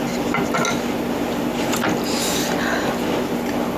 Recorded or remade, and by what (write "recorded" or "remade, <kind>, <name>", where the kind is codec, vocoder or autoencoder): recorded